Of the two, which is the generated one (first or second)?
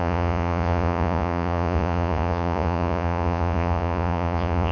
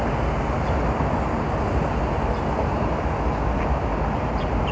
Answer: first